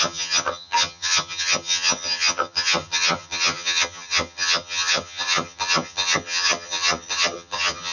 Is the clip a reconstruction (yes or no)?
yes